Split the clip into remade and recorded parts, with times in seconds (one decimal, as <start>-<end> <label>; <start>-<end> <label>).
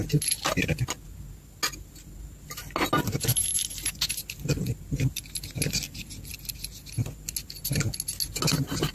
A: 0.0-8.9 recorded